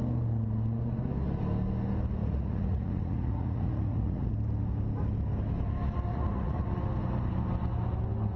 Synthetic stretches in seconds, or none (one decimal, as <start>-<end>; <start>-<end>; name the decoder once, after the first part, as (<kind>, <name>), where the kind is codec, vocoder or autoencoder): 2.2-4.3 (vocoder, Vocos); 6.1-6.6